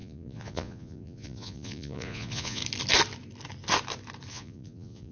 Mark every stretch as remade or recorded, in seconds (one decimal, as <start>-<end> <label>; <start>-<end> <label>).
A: 0.0-2.6 remade; 2.6-4.3 recorded; 4.3-5.1 remade